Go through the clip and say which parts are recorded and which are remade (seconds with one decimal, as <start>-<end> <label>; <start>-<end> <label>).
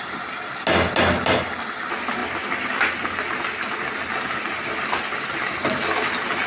0.0-6.5 recorded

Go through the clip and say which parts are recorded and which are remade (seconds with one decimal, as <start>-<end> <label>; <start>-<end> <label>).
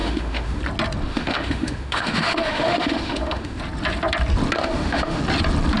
0.0-0.6 remade; 0.6-1.1 recorded; 1.1-3.6 remade; 3.6-4.6 recorded; 4.6-5.2 remade; 5.2-5.8 recorded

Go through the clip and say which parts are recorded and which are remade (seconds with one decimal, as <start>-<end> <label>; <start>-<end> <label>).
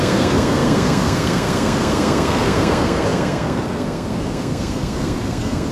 0.0-5.7 remade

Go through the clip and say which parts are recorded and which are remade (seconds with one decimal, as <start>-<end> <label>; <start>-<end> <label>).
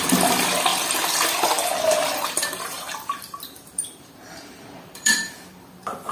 0.0-2.0 recorded; 2.0-5.1 remade; 5.1-6.1 recorded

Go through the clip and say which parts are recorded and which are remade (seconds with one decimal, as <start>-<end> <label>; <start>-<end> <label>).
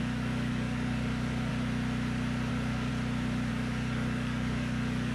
0.0-1.5 remade; 1.5-2.5 recorded; 2.5-2.9 remade; 2.9-3.5 recorded; 3.5-5.1 remade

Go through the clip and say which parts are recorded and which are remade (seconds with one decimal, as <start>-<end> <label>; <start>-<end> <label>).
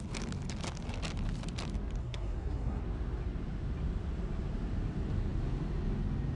0.0-2.0 recorded; 2.0-2.8 remade; 2.8-6.4 recorded